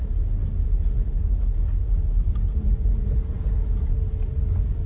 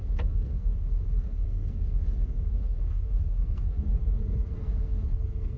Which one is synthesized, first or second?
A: second